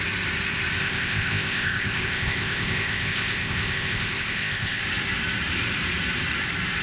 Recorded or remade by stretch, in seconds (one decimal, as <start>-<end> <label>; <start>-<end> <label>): 0.0-0.8 recorded; 0.8-4.8 remade; 4.8-6.8 recorded

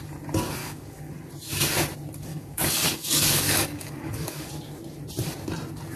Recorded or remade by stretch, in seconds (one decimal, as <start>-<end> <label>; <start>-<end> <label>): 0.0-0.6 recorded; 0.6-1.1 remade; 1.1-2.3 recorded; 2.3-4.5 remade; 4.5-6.0 recorded

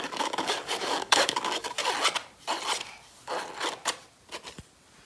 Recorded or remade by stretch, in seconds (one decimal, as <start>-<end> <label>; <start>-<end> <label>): 0.0-1.8 remade; 1.8-5.1 recorded

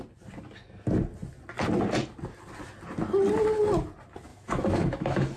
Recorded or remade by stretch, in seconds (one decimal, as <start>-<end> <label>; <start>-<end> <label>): 0.0-4.3 recorded; 4.3-5.4 remade